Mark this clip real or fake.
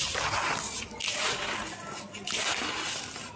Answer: real